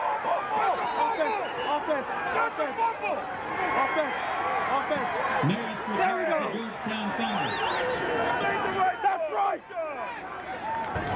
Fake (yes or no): no